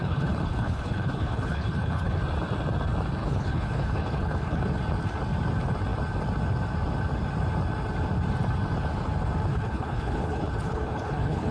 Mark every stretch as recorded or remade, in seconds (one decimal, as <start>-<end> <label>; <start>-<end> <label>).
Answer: 0.0-2.2 remade; 2.2-3.2 recorded; 3.2-4.6 remade; 4.6-9.5 recorded; 9.5-11.5 remade